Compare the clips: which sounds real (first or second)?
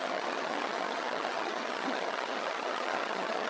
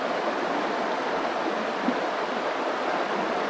second